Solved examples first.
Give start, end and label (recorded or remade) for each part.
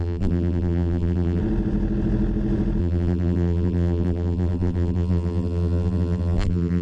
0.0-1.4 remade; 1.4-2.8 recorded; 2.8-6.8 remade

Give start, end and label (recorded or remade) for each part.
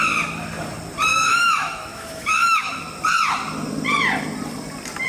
0.0-1.1 recorded; 1.1-2.8 remade; 2.8-5.1 recorded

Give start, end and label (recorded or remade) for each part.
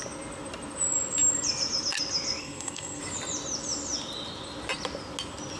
0.0-2.4 recorded; 2.4-3.0 remade; 3.0-5.6 recorded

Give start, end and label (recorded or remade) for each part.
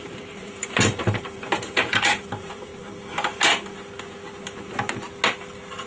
0.0-2.7 remade; 2.7-5.9 recorded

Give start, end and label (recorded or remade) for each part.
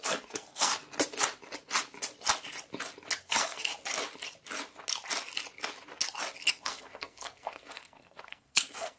0.0-0.7 remade; 0.7-3.2 recorded; 3.2-3.7 remade; 3.7-6.5 recorded; 6.5-9.0 remade